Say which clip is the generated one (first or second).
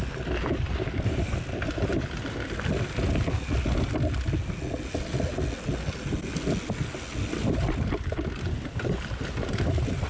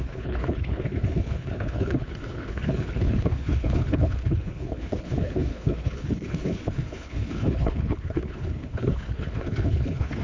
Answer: second